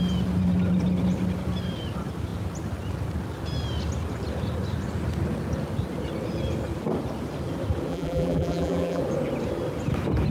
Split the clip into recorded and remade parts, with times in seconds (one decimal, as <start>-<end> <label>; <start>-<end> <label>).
0.0-7.9 recorded; 7.9-9.0 remade; 9.0-10.3 recorded